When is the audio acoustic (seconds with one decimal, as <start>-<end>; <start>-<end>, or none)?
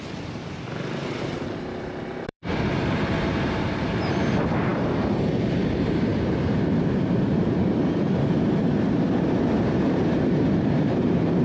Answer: none